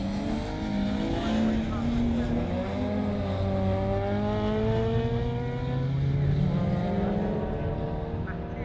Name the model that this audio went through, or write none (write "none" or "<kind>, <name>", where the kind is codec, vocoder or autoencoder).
none